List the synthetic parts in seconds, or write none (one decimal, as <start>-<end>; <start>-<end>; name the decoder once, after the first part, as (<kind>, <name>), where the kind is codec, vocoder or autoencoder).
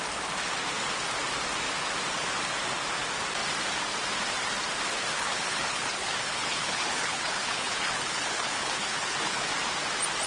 5.1-9.5 (codec, HILCodec)